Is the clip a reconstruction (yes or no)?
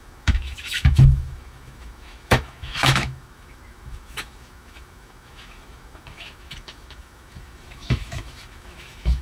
yes